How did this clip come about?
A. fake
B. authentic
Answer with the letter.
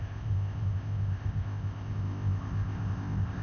A